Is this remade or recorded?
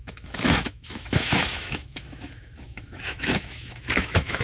remade